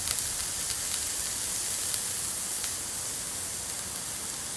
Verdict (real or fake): real